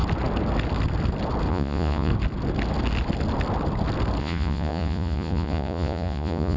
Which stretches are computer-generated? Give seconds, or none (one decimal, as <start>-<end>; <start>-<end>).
1.5-2.1; 4.2-6.6